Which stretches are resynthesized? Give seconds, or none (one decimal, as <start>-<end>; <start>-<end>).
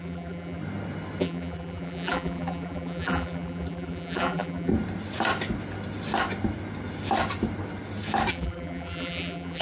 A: 0.0-0.6; 1.2-4.7; 8.3-9.6